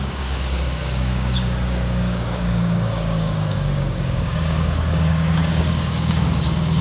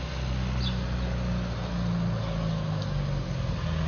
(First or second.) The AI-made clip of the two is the first